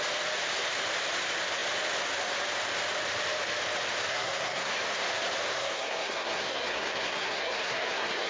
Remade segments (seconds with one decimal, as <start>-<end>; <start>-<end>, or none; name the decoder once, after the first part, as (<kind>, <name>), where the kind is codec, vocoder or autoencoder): 4.1-4.7 (codec, SNAC); 5.5-8.3